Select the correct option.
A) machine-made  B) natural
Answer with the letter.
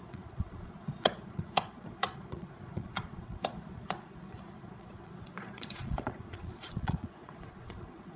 A